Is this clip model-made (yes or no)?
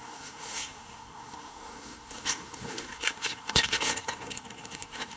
yes